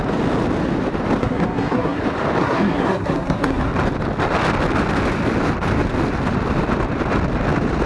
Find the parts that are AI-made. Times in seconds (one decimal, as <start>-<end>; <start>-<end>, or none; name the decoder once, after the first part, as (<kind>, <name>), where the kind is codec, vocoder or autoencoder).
1.2-2.0 (codec, SNAC); 2.4-3.7